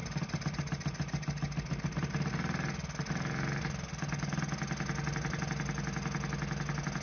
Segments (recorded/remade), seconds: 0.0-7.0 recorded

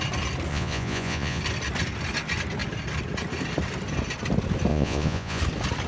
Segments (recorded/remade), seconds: 0.0-0.5 recorded; 0.5-1.4 remade; 1.4-4.7 recorded; 4.7-5.4 remade; 5.4-5.9 recorded

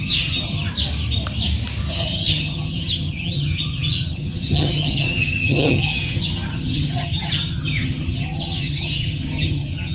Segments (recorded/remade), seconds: 0.0-0.7 remade; 0.7-1.9 recorded; 1.9-9.9 remade